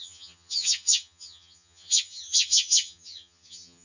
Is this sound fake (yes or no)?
yes